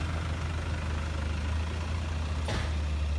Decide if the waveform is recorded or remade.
recorded